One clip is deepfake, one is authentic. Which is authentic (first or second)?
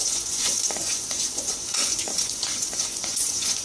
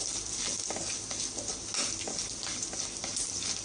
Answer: second